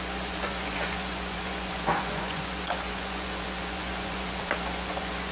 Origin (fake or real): fake